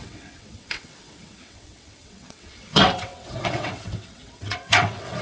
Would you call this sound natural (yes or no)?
no